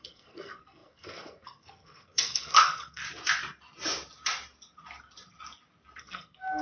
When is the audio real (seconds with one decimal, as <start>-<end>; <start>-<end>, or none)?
3.0-6.0